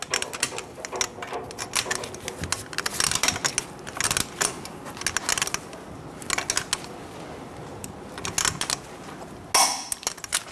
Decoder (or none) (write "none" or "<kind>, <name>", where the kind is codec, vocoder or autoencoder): none